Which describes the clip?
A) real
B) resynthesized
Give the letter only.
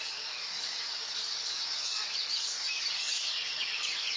B